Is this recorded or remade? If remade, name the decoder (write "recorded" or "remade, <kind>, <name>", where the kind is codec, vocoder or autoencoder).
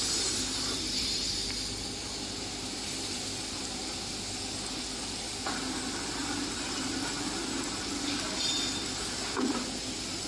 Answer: recorded